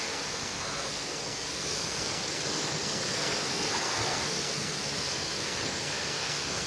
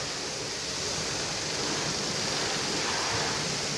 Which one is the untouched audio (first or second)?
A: second